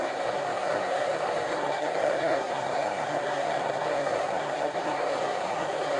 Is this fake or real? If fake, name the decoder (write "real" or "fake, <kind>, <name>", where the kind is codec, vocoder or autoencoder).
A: fake, codec, SNAC